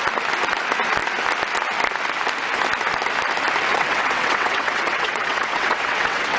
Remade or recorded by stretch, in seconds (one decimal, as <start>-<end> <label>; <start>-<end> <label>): 0.0-3.7 recorded; 3.7-6.4 remade